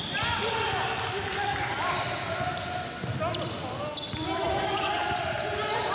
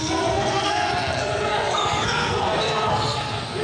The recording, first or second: first